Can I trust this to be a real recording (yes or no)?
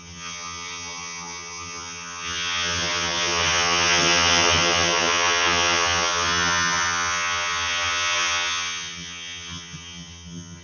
no